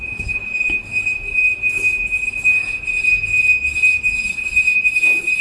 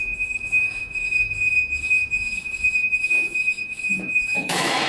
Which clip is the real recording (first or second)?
first